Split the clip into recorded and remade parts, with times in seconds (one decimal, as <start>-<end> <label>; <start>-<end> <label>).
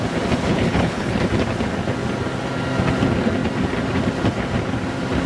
0.0-0.5 recorded; 0.5-1.2 remade; 1.2-5.3 recorded